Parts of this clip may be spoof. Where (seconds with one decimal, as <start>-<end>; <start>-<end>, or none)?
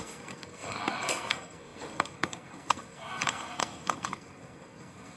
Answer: 0.0-5.2